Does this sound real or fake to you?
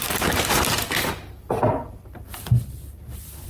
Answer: fake